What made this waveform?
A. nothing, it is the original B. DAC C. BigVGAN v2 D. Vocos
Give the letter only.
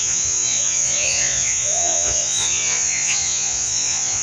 D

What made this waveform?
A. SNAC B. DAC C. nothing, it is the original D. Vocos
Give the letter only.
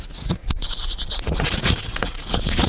D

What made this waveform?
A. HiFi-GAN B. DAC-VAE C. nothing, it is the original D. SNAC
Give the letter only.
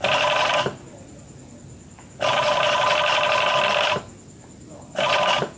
C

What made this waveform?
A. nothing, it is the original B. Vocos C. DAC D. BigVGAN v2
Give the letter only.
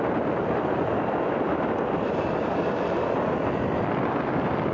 A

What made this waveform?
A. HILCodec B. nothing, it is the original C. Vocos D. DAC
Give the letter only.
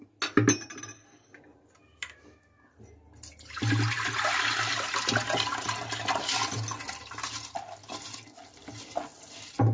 B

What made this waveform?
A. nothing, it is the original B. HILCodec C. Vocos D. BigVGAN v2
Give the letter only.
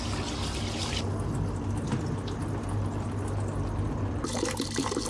A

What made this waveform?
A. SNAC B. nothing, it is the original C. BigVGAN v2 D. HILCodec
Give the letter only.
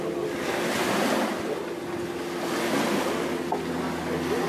B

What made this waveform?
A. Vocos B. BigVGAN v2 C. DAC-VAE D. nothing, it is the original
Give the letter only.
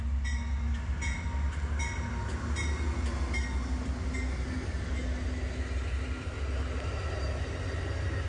D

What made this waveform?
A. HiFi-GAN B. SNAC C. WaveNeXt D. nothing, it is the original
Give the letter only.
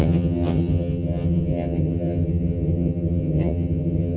A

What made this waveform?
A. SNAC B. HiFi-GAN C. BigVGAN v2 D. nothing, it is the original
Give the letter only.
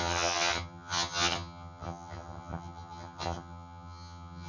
B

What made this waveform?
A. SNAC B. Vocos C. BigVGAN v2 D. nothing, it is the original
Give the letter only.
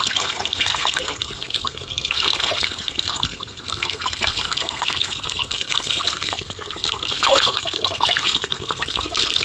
A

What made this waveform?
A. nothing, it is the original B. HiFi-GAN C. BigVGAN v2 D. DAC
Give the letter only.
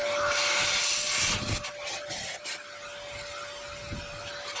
A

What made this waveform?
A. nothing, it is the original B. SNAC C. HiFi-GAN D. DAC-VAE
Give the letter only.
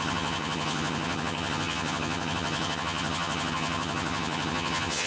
C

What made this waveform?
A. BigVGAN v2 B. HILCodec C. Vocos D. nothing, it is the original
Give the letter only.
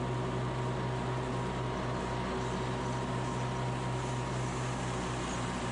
D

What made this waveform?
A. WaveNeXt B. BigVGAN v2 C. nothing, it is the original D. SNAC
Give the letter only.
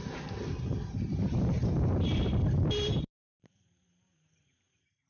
B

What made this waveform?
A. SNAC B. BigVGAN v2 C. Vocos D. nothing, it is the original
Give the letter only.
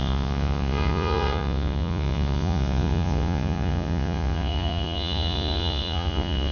C